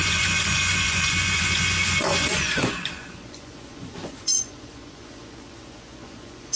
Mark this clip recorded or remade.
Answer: remade